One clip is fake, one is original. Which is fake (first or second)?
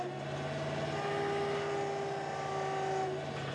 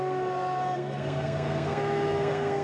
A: second